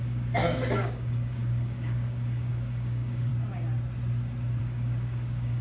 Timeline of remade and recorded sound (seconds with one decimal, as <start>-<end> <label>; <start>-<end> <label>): 0.0-3.3 remade; 3.3-4.6 recorded; 4.6-5.6 remade